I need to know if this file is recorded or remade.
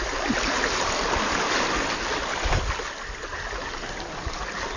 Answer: recorded